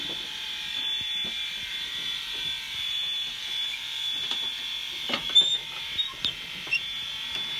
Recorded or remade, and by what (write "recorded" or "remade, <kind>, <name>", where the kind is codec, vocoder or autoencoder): remade, vocoder, BigVGAN v2